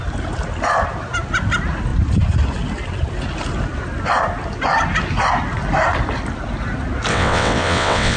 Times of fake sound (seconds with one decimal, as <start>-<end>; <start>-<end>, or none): 7.1-8.2